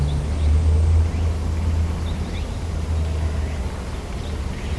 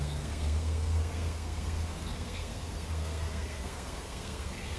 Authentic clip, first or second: first